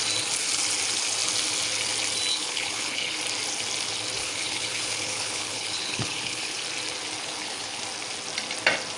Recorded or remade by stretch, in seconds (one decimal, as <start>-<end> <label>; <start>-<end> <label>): 0.0-2.3 recorded; 2.3-3.2 remade; 3.2-4.2 recorded; 4.2-6.6 remade; 6.6-7.2 recorded; 7.2-7.8 remade; 7.8-9.0 recorded